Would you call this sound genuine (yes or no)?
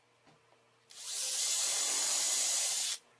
yes